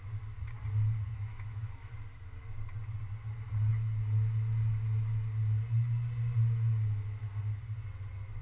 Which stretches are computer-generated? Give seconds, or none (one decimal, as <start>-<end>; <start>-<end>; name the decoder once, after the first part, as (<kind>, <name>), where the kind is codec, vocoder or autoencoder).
1.1-1.9 (autoencoder, DAC-VAE)